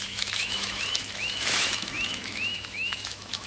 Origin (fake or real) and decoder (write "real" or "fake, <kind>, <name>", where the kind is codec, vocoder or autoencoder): fake, autoencoder, DAC-VAE